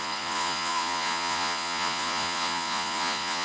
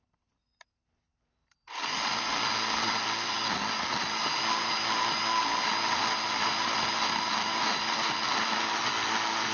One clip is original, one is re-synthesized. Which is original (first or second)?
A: second